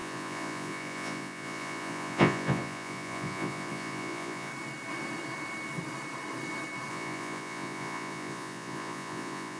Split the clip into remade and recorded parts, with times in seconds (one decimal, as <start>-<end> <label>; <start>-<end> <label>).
0.0-4.5 remade; 4.5-6.9 recorded; 6.9-9.6 remade